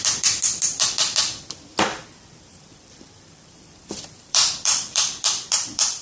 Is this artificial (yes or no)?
yes